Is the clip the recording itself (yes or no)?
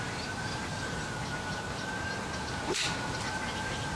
yes